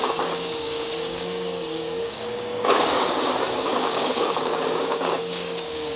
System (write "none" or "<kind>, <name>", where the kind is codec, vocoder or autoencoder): codec, DAC